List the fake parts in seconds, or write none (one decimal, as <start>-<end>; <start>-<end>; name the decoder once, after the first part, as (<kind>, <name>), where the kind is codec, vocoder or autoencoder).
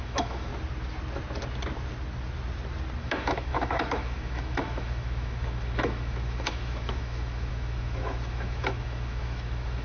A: 0.0-0.5 (autoencoder, DAC-VAE); 3.0-9.8